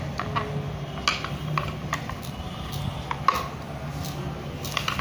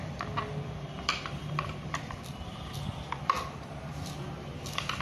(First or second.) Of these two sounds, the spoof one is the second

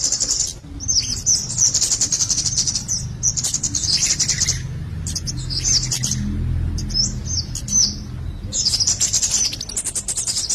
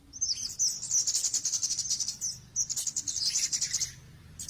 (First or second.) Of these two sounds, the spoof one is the first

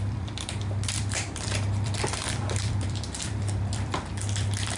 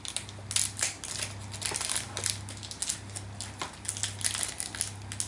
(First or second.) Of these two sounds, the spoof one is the first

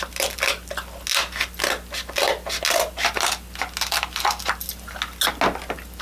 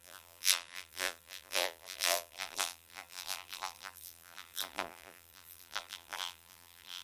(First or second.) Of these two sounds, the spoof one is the second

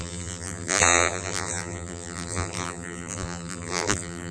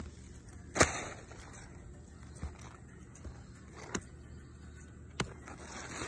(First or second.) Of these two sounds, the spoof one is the first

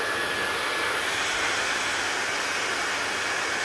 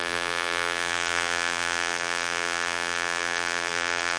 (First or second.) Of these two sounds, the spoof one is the second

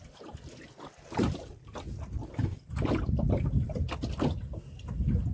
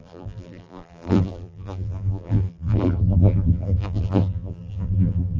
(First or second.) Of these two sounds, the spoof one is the second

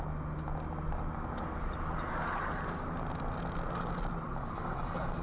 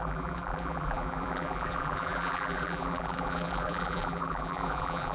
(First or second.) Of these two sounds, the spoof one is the second